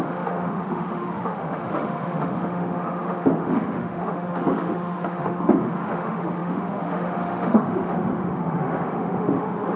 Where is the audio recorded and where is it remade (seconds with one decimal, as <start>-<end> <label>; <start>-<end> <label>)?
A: 0.0-9.8 remade